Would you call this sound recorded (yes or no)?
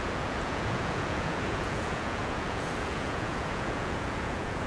no